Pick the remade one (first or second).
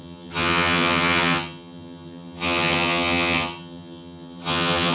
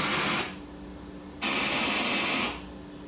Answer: first